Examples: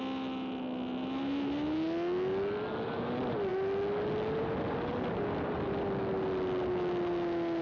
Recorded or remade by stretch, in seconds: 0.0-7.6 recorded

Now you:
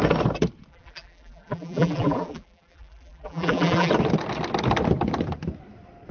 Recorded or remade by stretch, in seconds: 0.0-0.7 recorded; 0.7-3.9 remade; 3.9-6.1 recorded

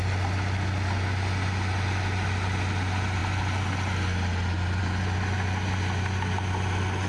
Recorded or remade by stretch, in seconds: 0.0-7.1 recorded

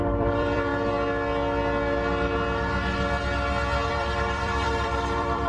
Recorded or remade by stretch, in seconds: 0.0-0.7 remade; 0.7-3.9 recorded; 3.9-5.5 remade